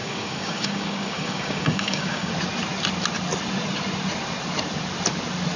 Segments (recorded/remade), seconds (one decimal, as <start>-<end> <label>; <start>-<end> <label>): 0.0-2.3 remade; 2.3-5.6 recorded